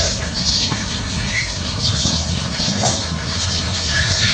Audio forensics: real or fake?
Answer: fake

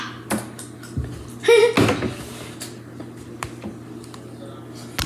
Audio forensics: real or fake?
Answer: real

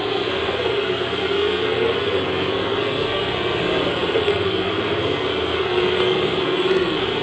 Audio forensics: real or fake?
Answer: fake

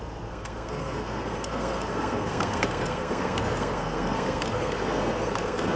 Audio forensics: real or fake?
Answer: fake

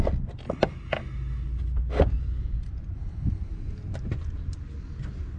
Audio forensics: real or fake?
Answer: real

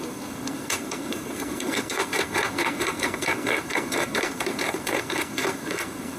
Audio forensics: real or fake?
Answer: fake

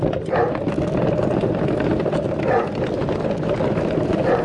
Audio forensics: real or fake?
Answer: real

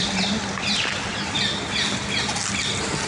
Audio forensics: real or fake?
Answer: real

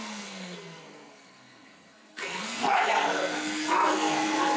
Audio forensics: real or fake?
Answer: fake